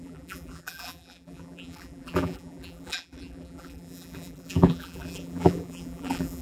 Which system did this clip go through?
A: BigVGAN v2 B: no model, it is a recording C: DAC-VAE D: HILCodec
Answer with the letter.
A